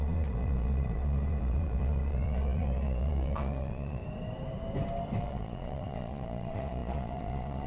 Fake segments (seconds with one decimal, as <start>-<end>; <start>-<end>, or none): 0.0-4.0; 5.2-7.7

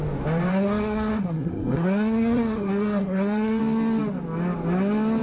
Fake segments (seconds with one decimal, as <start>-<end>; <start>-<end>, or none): 0.5-3.6

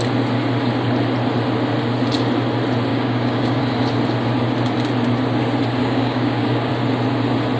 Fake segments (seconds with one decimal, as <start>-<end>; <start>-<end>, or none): 2.9-3.6; 5.8-6.7

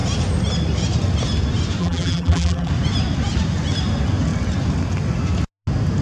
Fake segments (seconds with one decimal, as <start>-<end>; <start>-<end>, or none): 1.8-2.7